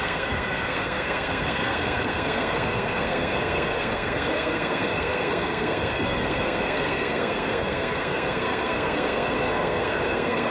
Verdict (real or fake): fake